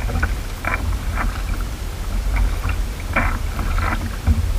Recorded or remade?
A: recorded